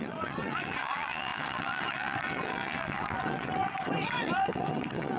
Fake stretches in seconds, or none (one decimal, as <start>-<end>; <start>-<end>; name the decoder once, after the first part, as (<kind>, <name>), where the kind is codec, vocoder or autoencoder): 0.0-5.2 (vocoder, WaveNeXt)